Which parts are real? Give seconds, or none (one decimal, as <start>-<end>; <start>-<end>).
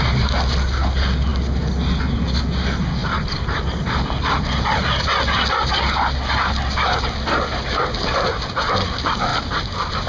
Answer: 0.0-3.0; 4.2-9.3